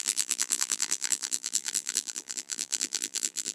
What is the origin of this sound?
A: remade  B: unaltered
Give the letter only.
A